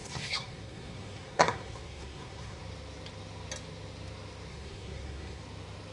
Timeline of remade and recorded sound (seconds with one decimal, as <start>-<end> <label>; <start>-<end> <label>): 0.0-2.6 remade; 2.6-4.5 recorded; 4.5-5.4 remade; 5.4-5.9 recorded